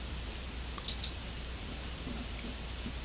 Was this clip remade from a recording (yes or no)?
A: yes